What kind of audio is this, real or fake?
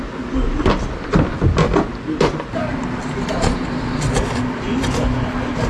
real